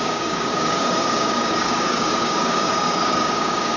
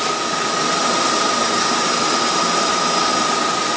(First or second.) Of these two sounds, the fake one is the first